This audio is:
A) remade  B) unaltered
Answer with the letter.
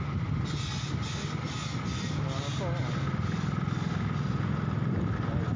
B